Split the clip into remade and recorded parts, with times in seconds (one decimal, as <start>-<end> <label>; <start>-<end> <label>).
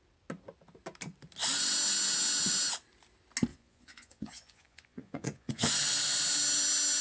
0.0-3.5 recorded; 3.5-5.7 remade; 5.7-7.0 recorded